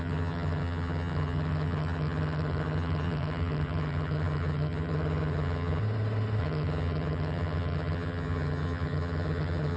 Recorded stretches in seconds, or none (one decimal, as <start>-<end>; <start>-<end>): 5.8-6.4